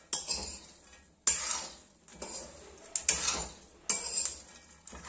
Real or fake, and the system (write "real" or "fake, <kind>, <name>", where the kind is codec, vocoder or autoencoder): real